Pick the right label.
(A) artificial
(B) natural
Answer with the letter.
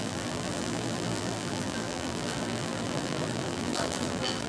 A